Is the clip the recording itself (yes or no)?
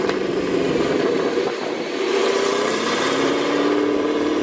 no